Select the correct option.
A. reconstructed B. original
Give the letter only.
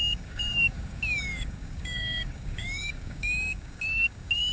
A